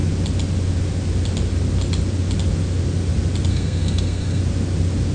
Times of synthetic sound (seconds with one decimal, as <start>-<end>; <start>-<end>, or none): 3.5-4.4